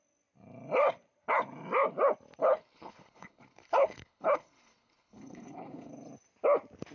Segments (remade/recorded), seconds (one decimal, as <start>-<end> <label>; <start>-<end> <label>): 0.0-2.4 recorded; 2.4-5.9 remade; 5.9-6.9 recorded